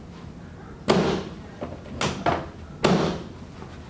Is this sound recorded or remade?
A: recorded